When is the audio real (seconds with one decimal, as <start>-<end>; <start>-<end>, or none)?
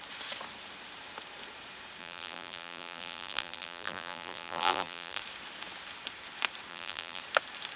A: 0.0-2.0; 5.2-6.7; 7.2-7.8